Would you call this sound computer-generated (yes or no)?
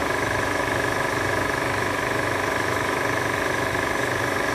yes